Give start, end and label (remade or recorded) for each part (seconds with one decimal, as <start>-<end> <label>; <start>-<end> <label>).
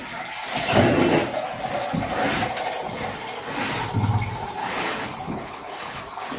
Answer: 0.0-4.6 recorded; 4.6-6.0 remade; 6.0-6.4 recorded